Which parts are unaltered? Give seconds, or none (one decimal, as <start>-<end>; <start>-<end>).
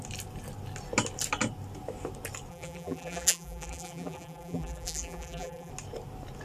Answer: 0.0-2.5; 5.7-6.4